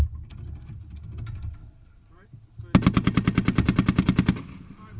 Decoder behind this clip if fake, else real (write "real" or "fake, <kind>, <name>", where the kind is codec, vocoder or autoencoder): real